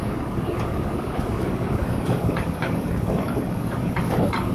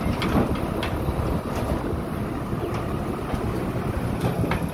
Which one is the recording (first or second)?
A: second